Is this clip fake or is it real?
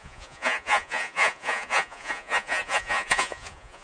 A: fake